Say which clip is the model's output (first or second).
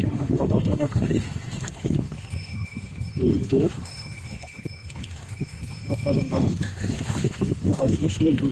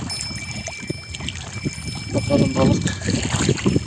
first